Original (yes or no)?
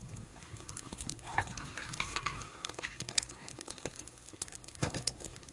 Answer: no